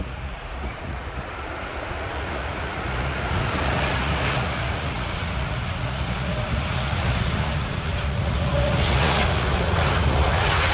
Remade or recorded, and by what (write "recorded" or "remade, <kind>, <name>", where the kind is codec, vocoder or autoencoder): remade, vocoder, Vocos